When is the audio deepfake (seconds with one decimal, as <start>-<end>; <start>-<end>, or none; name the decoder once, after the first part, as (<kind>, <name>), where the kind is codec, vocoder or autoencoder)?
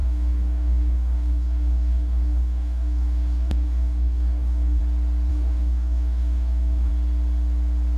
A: 0.0-4.8 (codec, DAC); 5.3-6.9